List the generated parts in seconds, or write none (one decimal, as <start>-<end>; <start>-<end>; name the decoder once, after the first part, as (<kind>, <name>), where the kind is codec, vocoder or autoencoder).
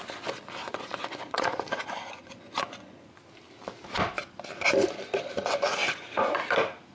0.6-3.2 (vocoder, Vocos); 5.8-6.4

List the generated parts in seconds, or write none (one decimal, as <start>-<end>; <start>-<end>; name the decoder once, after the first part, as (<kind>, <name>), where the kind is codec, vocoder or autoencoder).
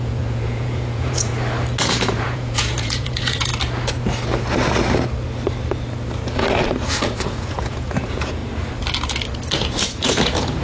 0.0-1.3 (vocoder, Vocos); 1.9-3.5; 6.9-8.4; 9.6-10.6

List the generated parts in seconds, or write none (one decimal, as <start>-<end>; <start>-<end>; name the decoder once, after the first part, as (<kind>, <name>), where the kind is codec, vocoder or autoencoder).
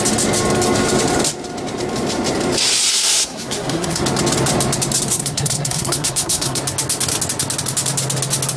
2.9-4.0 (codec, SNAC); 5.1-6.6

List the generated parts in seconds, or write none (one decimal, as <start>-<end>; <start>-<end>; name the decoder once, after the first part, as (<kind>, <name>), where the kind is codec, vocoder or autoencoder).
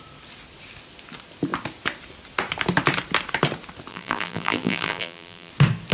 3.9-5.5 (vocoder, BigVGAN v2)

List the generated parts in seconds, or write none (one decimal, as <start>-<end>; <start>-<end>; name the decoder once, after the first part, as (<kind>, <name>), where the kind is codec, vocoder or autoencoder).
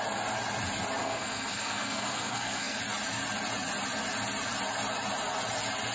1.0-2.8 (codec, SNAC)